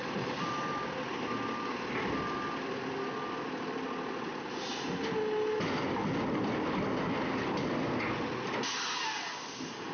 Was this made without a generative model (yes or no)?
yes